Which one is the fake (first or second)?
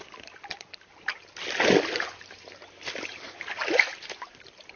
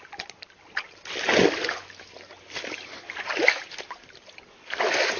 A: first